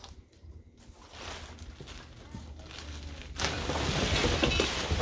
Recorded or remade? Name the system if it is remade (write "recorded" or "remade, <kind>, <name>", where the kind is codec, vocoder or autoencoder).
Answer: recorded